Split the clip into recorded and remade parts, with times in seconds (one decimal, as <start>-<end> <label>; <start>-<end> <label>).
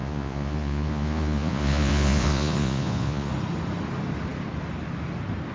0.0-3.3 remade; 3.3-5.5 recorded